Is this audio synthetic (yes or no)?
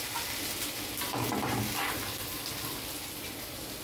no